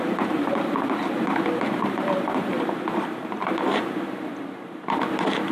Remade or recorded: remade